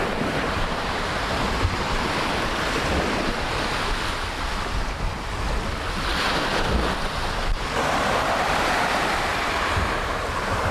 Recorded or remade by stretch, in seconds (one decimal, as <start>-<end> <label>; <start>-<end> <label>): 0.0-2.9 remade; 2.9-7.8 recorded; 7.8-10.7 remade